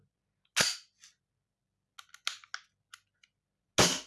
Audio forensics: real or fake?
real